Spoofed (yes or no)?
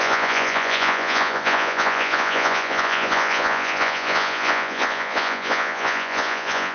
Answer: yes